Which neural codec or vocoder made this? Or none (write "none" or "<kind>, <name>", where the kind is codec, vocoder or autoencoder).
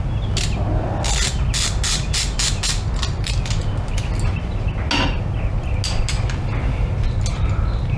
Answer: none